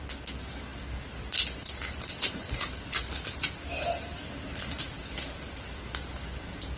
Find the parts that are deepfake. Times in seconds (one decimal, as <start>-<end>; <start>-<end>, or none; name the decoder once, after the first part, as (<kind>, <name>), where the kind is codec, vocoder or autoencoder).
none